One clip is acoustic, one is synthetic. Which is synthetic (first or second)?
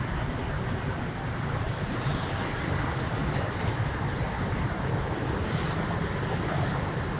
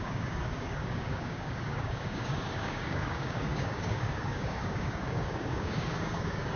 second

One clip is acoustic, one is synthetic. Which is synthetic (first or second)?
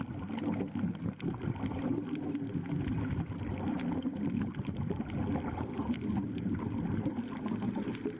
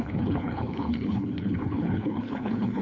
second